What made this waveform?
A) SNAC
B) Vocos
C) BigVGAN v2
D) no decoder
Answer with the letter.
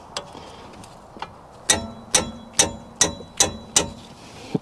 D